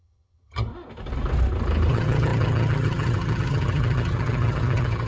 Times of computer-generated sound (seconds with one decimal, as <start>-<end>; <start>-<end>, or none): 0.0-0.7; 1.9-5.1